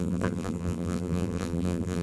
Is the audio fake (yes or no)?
yes